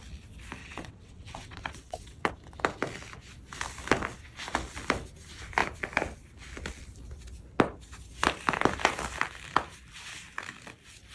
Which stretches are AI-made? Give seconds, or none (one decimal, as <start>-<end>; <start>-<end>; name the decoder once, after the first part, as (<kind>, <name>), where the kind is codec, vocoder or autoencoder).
0.6-2.3 (vocoder, WaveNeXt)